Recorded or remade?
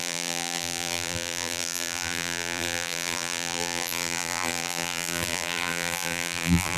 remade